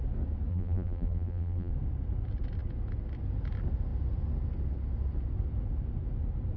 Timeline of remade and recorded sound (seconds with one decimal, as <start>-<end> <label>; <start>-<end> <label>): 0.0-0.5 recorded; 0.5-1.7 remade; 1.7-6.6 recorded